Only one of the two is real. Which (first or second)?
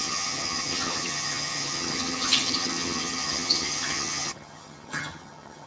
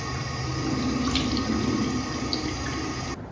second